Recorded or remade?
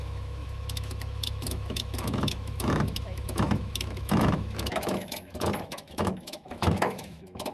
remade